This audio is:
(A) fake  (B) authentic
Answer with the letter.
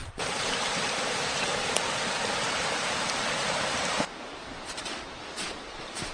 A